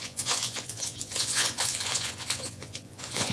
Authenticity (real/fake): fake